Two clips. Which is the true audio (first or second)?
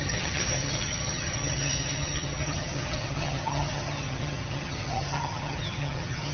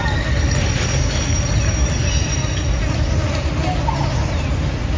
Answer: second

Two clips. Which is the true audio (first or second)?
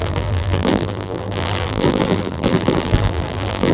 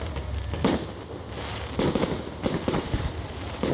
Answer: second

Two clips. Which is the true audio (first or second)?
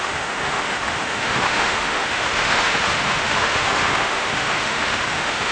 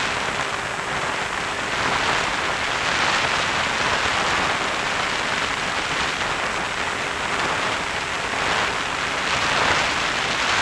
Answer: second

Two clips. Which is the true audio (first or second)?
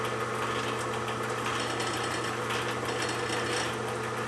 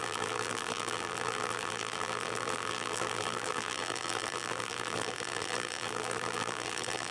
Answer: first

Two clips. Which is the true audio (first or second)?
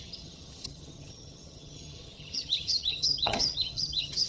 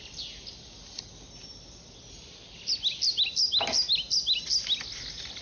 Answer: second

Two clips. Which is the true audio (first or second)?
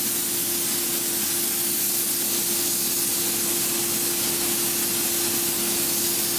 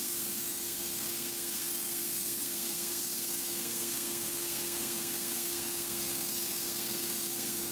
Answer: first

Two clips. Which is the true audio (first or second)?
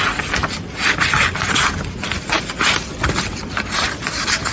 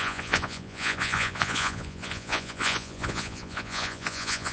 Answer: first